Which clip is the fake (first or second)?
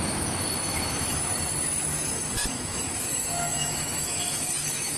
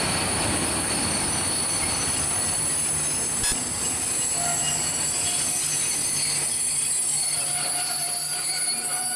first